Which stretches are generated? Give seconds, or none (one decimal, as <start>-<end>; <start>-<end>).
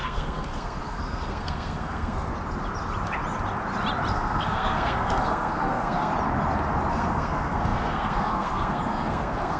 0.0-2.3; 4.1-6.1; 6.9-9.6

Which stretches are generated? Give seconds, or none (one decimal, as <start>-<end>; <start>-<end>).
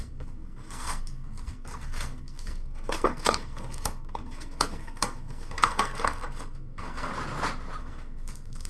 0.0-7.1; 7.8-8.7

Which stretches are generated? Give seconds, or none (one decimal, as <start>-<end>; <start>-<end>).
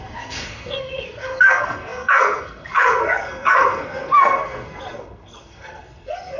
0.0-6.4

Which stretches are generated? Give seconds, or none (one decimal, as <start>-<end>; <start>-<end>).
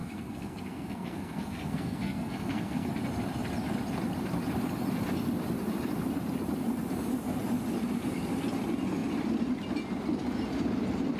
0.0-2.9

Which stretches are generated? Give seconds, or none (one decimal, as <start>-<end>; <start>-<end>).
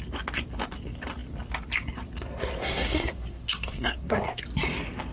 2.6-4.4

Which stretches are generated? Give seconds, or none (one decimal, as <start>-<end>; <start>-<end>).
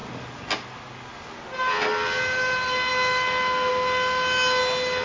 none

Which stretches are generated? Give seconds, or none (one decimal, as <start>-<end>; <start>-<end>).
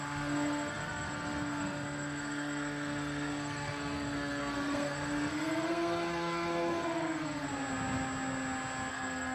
0.0-7.5; 8.9-9.3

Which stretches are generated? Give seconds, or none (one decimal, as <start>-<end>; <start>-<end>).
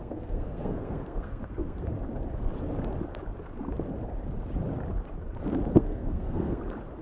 0.0-1.8; 5.7-6.6